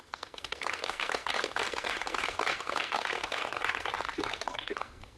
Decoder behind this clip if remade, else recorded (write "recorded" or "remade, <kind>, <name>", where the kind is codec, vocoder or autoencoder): remade, codec, SNAC